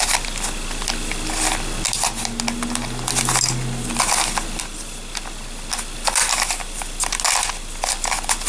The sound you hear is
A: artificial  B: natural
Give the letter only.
B